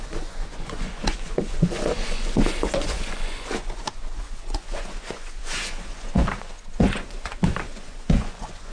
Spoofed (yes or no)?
yes